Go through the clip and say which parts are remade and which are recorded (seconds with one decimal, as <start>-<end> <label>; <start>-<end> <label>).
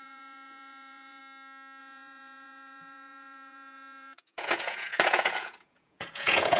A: 0.0-1.2 remade; 1.2-1.8 recorded; 1.8-6.6 remade